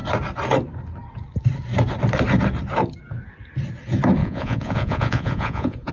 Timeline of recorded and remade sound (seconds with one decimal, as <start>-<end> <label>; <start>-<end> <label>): 0.0-4.2 recorded; 4.2-5.9 remade